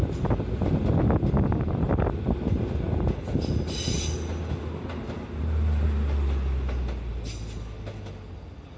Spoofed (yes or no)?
no